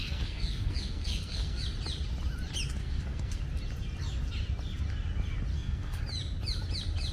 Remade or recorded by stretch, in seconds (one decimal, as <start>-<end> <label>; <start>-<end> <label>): 0.0-1.6 remade; 1.6-2.8 recorded; 2.8-3.4 remade; 3.4-5.5 recorded; 5.5-6.0 remade; 6.0-7.1 recorded

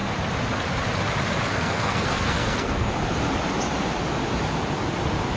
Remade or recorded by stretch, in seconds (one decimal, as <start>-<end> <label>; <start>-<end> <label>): 0.0-1.5 recorded; 1.5-2.9 remade; 2.9-5.4 recorded